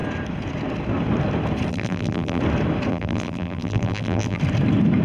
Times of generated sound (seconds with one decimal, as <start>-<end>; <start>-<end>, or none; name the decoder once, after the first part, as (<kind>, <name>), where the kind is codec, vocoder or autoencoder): 1.7-2.4 (vocoder, BigVGAN v2); 2.9-4.4